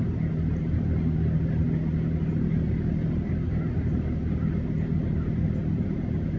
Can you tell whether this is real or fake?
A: real